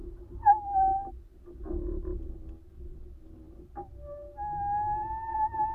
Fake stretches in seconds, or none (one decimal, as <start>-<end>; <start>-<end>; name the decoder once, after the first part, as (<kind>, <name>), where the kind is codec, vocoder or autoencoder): none